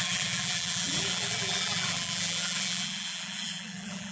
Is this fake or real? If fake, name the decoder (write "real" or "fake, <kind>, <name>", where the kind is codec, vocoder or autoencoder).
fake, vocoder, BigVGAN v2